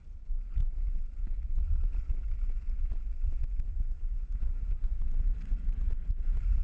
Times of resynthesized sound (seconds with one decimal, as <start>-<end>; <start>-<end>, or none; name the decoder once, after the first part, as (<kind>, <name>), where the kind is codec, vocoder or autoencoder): 3.8-5.0 (codec, SNAC)